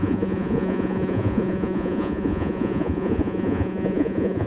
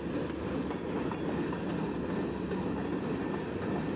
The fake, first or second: first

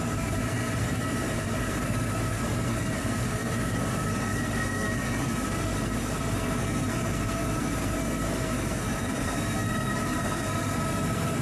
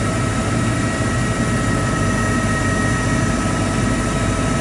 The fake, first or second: first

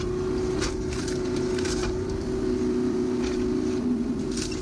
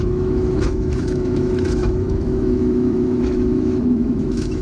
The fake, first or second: second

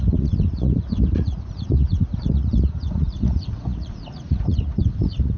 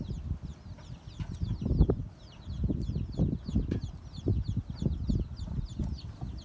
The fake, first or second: first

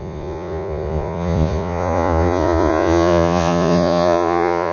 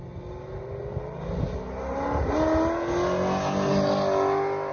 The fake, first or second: first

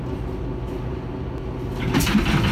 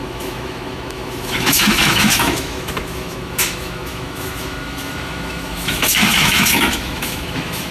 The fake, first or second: second